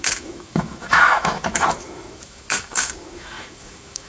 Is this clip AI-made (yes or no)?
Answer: yes